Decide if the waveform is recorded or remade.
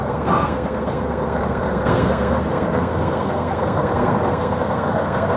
remade